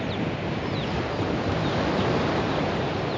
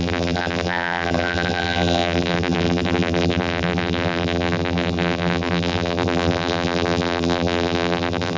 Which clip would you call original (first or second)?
first